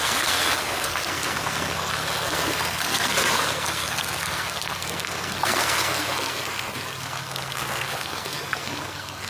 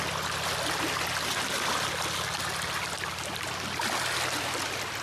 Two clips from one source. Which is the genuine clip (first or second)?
second